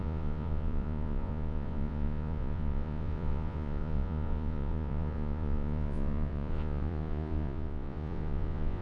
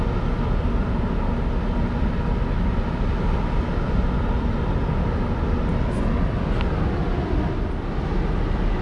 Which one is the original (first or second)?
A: second